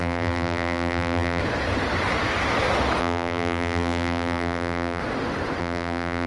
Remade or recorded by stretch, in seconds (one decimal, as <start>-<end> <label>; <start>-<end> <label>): 0.0-1.4 remade; 1.4-3.0 recorded; 3.0-5.0 remade; 5.0-5.6 recorded; 5.6-6.3 remade